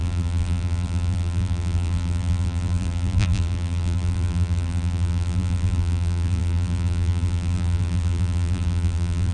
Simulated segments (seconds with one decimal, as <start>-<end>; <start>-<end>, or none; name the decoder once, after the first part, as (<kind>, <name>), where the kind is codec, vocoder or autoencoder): 0.0-9.3 (vocoder, BigVGAN v2)